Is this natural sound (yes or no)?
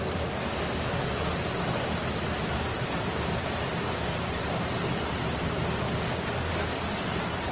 yes